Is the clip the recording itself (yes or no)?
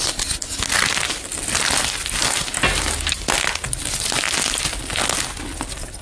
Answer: yes